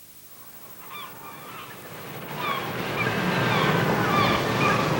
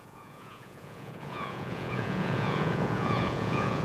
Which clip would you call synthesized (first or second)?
second